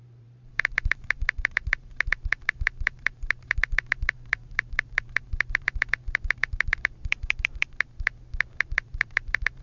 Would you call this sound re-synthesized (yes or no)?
yes